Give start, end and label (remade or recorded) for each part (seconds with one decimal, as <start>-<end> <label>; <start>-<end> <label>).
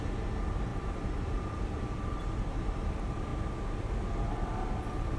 0.0-5.2 recorded